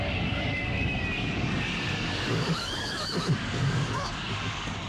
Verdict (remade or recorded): remade